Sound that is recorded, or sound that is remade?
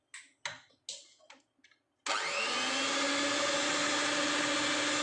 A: recorded